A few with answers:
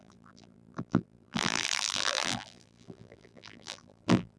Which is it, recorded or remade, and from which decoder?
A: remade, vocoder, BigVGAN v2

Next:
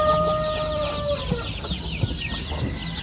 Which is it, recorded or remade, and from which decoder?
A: recorded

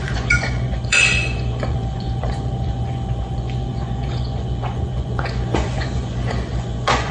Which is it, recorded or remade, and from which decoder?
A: remade, vocoder, Vocos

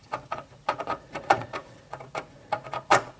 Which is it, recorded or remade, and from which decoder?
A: remade, vocoder, Vocos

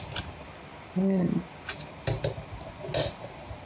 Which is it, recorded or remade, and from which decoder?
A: recorded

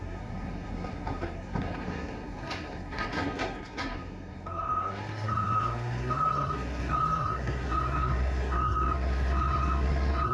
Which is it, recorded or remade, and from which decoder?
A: remade, codec, SNAC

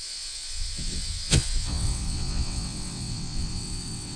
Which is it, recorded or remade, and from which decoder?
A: remade, vocoder, WaveNeXt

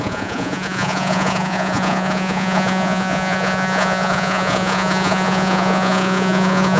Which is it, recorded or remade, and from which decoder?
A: remade, vocoder, Vocos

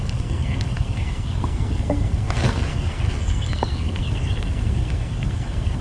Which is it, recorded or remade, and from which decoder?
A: remade, codec, SNAC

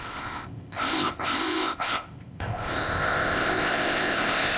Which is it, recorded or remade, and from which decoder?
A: remade, codec, ZipCodec